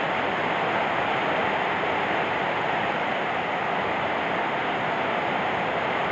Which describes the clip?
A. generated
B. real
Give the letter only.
B